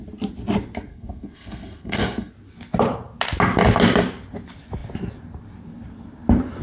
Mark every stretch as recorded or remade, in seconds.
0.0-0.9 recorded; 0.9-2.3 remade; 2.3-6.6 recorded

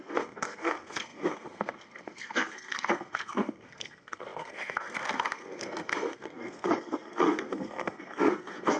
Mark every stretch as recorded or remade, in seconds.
0.0-8.8 remade

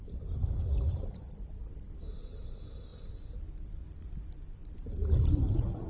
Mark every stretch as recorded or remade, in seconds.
0.0-5.9 recorded

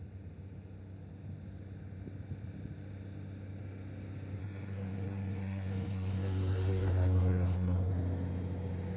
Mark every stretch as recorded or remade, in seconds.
0.0-4.4 recorded; 4.4-7.9 remade; 7.9-9.0 recorded

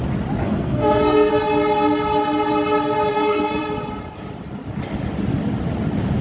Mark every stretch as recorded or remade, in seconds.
0.0-0.4 recorded; 0.4-1.3 remade; 1.3-3.1 recorded; 3.1-3.6 remade; 3.6-6.2 recorded

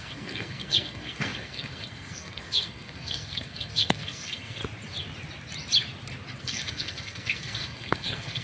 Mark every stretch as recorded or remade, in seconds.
0.0-4.6 remade; 4.6-6.4 recorded; 6.4-8.4 remade

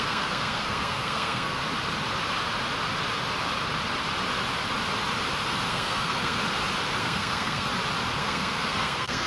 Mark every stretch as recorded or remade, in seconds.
0.0-1.6 remade; 1.6-5.7 recorded; 5.7-6.4 remade; 6.4-7.0 recorded; 7.0-7.7 remade; 7.7-8.2 recorded; 8.2-9.3 remade